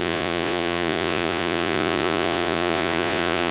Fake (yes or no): yes